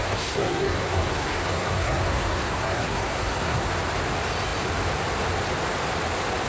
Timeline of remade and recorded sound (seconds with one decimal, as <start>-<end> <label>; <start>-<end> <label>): 0.0-3.7 remade; 3.7-6.5 recorded